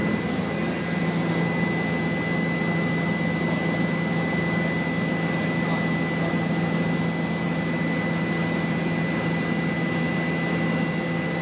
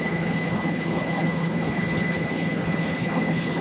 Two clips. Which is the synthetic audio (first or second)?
second